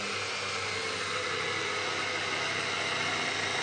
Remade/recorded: recorded